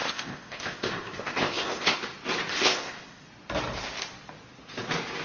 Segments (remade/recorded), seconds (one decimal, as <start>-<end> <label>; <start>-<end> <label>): 0.0-2.0 remade; 2.0-2.5 recorded; 2.5-3.3 remade; 3.3-5.2 recorded